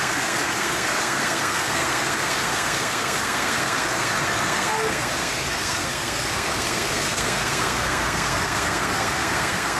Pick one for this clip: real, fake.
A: fake